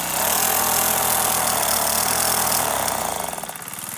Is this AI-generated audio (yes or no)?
no